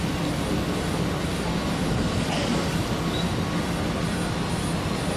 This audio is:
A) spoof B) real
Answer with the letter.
B